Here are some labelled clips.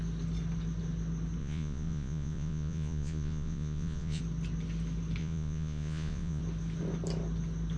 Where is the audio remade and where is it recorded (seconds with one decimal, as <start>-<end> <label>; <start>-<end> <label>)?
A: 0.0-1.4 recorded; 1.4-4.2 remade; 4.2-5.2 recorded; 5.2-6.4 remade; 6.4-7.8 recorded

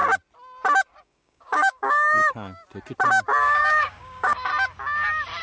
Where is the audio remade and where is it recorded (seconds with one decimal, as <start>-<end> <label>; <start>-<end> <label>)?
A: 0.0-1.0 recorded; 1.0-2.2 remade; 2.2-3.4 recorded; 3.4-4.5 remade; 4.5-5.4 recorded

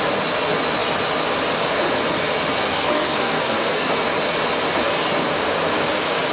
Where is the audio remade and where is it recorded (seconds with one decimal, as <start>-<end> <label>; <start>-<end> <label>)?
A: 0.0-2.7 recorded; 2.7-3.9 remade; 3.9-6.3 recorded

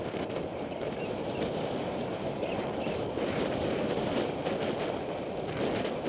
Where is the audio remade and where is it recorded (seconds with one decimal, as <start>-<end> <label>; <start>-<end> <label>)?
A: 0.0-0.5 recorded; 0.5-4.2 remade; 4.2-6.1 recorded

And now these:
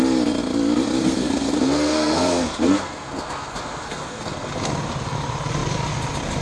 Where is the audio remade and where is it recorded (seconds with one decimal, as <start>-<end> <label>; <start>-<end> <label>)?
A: 0.0-1.0 recorded; 1.0-4.5 remade; 4.5-6.4 recorded

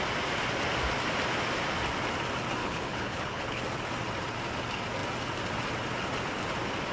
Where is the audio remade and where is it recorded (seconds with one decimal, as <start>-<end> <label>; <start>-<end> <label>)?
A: 0.0-2.6 recorded; 2.6-3.6 remade; 3.6-6.9 recorded

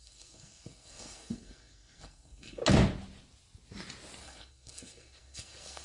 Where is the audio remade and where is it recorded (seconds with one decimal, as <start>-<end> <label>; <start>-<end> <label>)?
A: 0.0-2.6 remade; 2.6-4.2 recorded; 4.2-5.8 remade

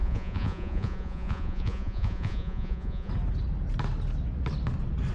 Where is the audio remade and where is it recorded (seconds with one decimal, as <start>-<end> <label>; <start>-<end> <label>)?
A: 0.0-3.1 remade; 3.1-5.1 recorded